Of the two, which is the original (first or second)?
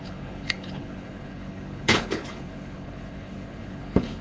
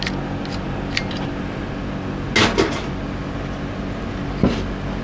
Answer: second